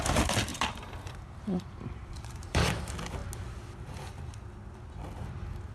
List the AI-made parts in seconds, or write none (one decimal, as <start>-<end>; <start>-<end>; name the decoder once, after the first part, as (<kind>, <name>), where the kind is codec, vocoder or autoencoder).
0.5-2.8 (vocoder, BigVGAN v2)